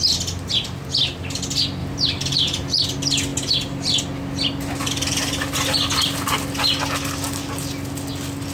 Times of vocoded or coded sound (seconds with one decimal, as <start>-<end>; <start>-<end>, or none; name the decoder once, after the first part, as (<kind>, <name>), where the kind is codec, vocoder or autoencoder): 1.8-2.8 (vocoder, BigVGAN v2)

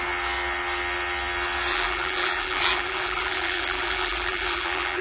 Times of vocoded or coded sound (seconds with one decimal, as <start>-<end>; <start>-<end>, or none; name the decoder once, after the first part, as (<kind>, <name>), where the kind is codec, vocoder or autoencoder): 1.7-5.0 (vocoder, BigVGAN v2)

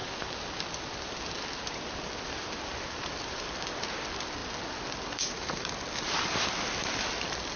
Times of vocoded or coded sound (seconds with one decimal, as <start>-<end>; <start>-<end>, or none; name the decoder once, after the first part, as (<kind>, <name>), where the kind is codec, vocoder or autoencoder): 0.0-4.4 (vocoder, BigVGAN v2); 4.9-7.6

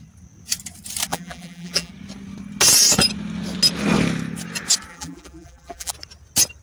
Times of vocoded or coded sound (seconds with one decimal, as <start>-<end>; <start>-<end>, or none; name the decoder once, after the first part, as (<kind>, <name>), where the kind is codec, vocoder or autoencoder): 1.1-1.9 (vocoder, BigVGAN v2); 4.9-5.9

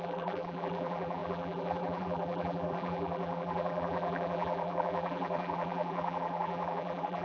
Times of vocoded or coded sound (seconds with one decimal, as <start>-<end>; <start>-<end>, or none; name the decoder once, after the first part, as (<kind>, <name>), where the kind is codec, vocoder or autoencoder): 0.0-7.2 (vocoder, BigVGAN v2)

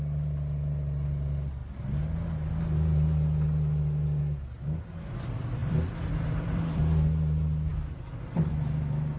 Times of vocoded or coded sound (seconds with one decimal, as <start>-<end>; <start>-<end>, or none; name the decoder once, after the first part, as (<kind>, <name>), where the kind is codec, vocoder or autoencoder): 5.6-6.8 (vocoder, BigVGAN v2); 7.7-8.5

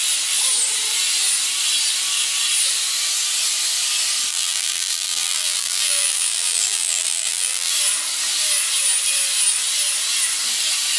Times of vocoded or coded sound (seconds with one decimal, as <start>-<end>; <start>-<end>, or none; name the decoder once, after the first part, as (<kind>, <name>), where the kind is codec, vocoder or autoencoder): 4.3-7.7 (vocoder, BigVGAN v2)

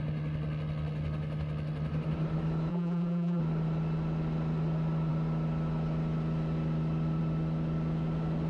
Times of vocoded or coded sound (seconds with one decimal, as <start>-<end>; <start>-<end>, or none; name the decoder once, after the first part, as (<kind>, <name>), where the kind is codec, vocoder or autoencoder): 2.7-3.4 (vocoder, BigVGAN v2)